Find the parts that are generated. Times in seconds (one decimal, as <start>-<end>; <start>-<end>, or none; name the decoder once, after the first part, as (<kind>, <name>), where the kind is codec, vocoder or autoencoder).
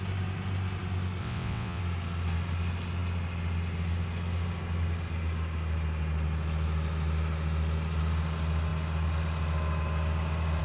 1.2-1.8 (vocoder, WaveNeXt)